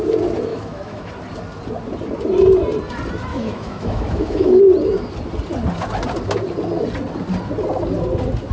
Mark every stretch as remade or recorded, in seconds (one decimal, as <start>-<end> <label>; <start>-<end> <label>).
0.0-0.5 recorded; 0.5-1.1 remade; 1.1-3.3 recorded; 3.3-4.6 remade; 4.6-8.5 recorded